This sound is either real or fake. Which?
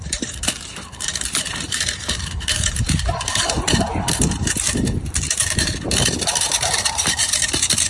fake